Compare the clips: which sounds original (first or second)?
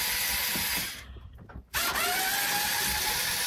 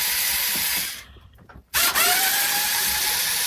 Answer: first